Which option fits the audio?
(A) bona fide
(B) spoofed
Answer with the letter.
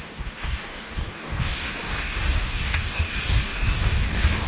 B